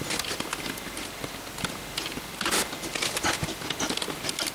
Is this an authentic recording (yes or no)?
yes